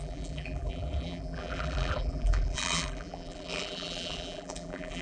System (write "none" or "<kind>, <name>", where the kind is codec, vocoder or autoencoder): vocoder, BigVGAN v2